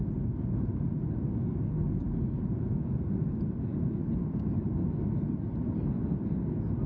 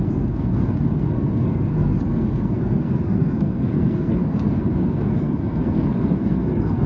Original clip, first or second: first